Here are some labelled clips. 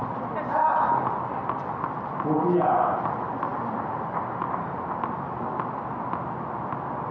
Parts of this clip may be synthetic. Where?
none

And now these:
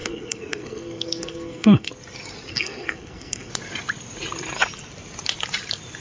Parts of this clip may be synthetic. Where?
0.0-1.9 (codec, SNAC); 2.5-3.5

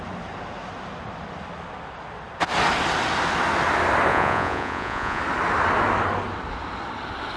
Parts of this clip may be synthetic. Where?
4.1-5.2 (vocoder, Vocos)